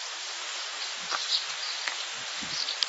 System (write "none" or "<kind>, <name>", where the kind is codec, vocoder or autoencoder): none